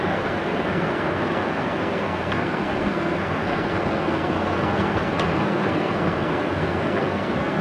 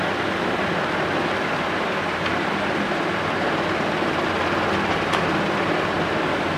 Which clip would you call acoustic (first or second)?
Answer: second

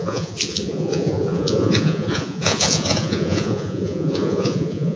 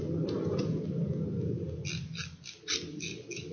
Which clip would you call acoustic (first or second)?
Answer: second